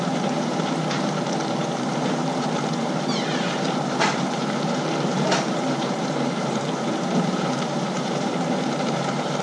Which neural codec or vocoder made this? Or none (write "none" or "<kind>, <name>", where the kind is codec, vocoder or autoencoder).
vocoder, BigVGAN v2